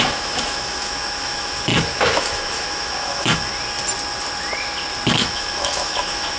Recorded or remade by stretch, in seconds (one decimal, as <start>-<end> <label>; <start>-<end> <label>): 0.0-3.5 remade; 3.5-5.2 recorded; 5.2-6.4 remade